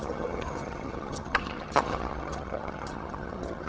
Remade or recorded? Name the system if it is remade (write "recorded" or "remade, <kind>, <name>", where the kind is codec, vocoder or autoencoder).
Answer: remade, vocoder, HiFi-GAN